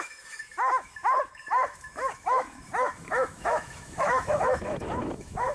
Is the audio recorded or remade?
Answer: remade